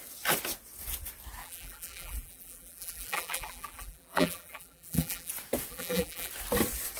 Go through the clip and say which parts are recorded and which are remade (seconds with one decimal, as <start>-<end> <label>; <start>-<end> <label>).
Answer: 0.0-1.4 recorded; 1.4-5.3 remade; 5.3-5.7 recorded; 5.7-6.3 remade; 6.3-7.0 recorded